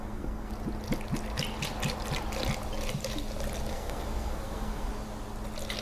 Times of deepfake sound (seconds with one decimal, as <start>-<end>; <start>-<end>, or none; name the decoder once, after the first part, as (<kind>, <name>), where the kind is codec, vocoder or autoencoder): 0.0-0.5 (codec, SNAC); 3.7-4.9